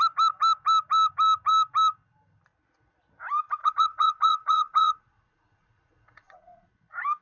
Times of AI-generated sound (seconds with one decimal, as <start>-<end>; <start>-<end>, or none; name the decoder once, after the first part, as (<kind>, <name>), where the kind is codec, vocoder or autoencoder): 3.6-6.7 (vocoder, Vocos)